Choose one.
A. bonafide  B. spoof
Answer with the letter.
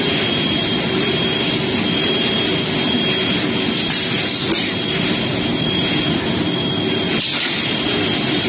A